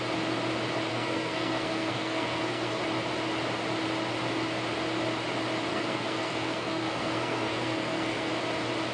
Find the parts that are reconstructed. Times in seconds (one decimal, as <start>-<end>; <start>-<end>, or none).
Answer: 0.9-2.8; 5.7-8.3